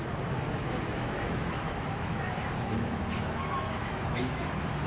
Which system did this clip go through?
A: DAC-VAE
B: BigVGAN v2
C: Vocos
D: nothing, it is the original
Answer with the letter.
A